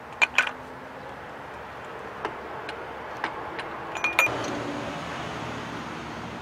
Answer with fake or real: real